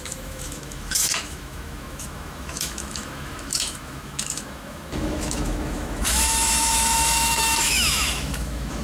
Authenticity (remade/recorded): remade